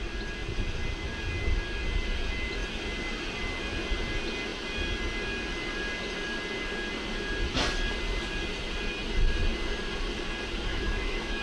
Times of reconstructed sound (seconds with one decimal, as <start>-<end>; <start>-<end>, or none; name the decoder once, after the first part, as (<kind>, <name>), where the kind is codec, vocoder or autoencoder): 10.7-11.4 (autoencoder, DAC-VAE)